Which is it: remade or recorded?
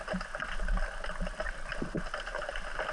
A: recorded